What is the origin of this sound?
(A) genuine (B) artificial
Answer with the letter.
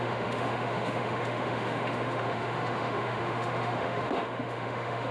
B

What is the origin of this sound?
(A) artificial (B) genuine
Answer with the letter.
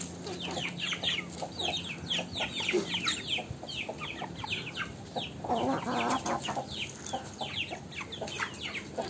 B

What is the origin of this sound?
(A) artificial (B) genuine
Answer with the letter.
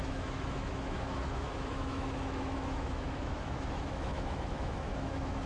A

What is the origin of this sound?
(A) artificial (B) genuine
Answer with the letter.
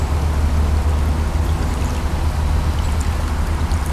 B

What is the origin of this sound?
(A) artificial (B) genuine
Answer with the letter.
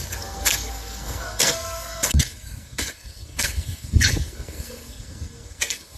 A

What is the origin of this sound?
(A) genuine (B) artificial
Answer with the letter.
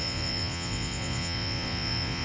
B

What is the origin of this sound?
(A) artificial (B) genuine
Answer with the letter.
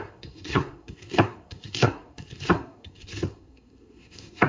A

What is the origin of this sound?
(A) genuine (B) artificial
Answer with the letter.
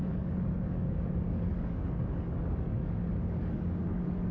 B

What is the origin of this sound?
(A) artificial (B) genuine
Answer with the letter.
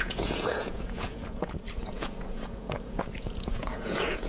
A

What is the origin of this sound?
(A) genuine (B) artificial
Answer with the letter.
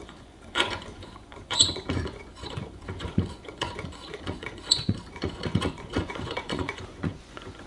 B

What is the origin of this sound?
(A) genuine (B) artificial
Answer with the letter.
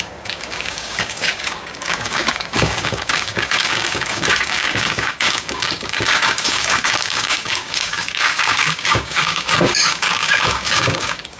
B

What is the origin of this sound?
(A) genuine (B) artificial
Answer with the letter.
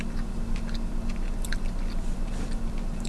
A